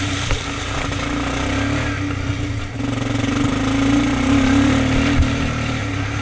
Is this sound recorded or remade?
recorded